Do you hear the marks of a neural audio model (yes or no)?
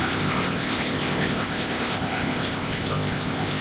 yes